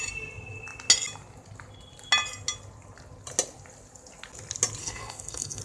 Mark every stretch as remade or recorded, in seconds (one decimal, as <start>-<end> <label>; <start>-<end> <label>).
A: 0.0-4.8 recorded; 4.8-5.6 remade